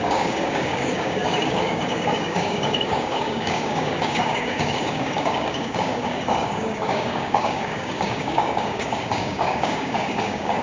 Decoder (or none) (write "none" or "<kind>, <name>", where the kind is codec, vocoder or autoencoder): codec, DAC